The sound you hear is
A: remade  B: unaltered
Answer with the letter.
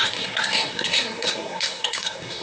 A